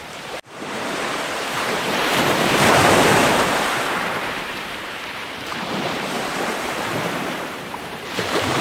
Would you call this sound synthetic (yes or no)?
yes